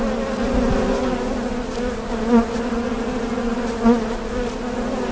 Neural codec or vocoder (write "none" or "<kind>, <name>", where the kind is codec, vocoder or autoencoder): none